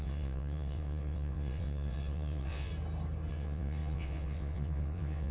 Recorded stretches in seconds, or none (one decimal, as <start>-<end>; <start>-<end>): 2.7-3.3